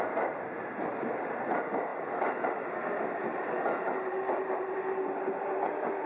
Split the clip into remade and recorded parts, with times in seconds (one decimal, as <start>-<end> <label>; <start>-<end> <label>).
0.0-6.1 recorded